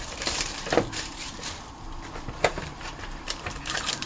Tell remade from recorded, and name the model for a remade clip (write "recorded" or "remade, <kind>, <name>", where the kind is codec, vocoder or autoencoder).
remade, vocoder, BigVGAN v2